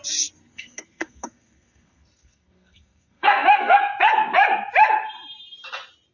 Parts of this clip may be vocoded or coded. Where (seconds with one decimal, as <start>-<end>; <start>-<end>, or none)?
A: 0.4-3.8